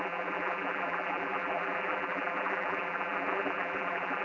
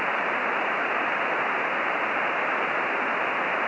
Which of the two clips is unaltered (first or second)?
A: second